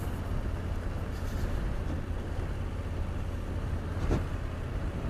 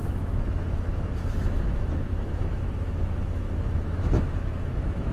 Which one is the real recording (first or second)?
first